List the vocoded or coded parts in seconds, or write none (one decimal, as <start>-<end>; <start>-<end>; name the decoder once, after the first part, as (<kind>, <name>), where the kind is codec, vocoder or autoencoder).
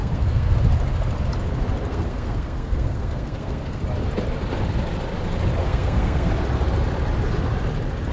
0.0-0.6 (codec, SNAC); 1.9-3.8; 5.6-6.3